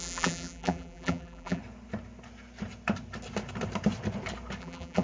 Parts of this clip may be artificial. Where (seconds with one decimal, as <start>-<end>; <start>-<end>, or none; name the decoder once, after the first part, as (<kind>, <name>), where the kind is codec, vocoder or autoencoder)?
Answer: 0.0-1.6 (vocoder, BigVGAN v2); 4.6-5.0